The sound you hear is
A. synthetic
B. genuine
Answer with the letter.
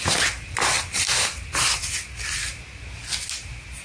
B